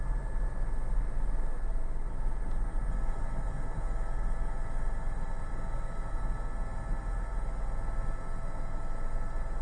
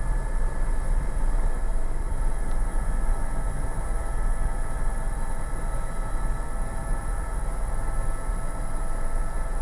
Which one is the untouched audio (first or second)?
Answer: first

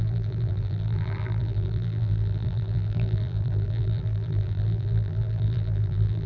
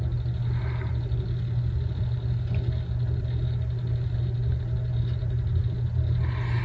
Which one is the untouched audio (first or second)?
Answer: second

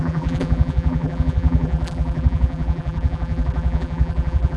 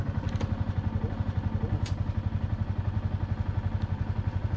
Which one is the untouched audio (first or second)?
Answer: second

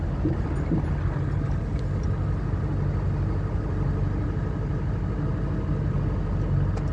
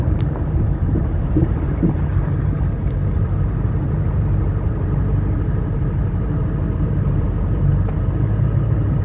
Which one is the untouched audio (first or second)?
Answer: first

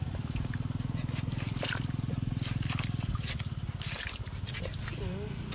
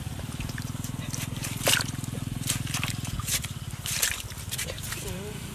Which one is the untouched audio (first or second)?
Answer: first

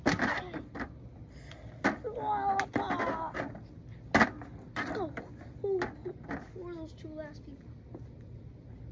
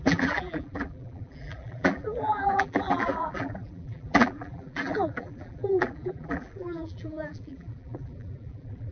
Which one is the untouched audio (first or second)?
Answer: first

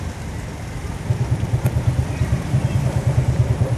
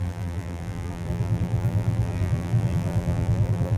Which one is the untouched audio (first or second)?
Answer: first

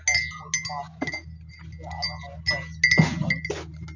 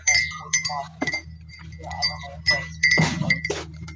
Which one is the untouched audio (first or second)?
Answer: first